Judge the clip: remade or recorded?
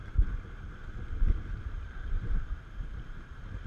remade